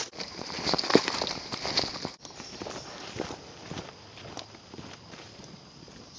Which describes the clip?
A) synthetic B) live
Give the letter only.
B